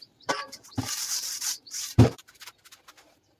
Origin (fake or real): fake